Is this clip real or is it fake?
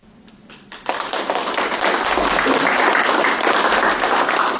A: fake